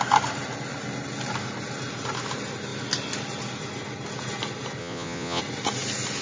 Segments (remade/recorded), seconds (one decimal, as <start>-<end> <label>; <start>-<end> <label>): 0.0-4.8 recorded; 4.8-5.4 remade; 5.4-6.2 recorded